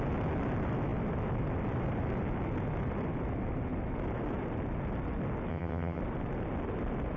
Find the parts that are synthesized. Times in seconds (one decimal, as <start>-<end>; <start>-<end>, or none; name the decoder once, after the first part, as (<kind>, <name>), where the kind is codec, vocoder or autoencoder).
5.5-6.0 (vocoder, HiFi-GAN)